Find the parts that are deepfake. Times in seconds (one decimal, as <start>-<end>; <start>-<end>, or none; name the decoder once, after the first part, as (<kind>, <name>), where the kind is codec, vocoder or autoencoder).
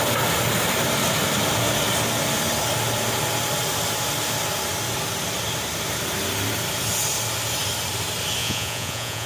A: 8.4-9.3 (vocoder, Vocos)